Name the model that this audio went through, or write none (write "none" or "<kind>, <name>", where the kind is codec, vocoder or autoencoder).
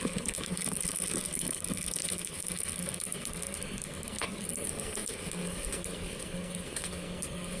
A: codec, SNAC